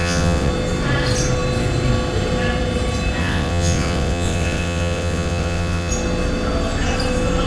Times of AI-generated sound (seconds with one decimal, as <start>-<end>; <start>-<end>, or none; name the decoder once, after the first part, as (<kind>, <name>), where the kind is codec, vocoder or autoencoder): 0.0-0.5 (vocoder, WaveNeXt); 3.2-5.9